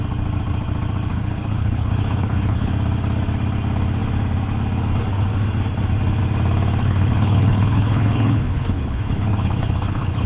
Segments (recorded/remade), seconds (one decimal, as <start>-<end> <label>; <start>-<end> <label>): 0.0-1.1 recorded; 1.1-2.7 remade; 2.7-6.8 recorded; 6.8-10.3 remade